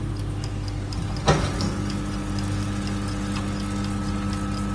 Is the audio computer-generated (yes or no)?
no